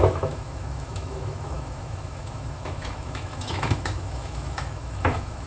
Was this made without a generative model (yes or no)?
no